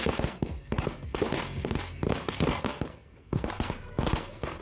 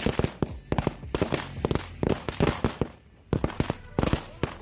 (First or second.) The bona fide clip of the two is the second